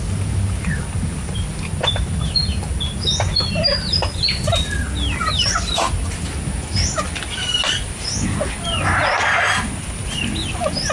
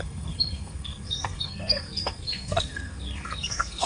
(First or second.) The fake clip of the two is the second